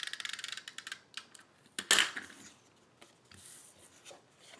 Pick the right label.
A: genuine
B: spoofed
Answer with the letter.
A